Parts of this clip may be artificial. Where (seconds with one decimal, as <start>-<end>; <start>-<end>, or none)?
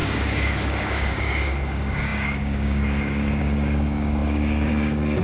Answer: 0.0-5.2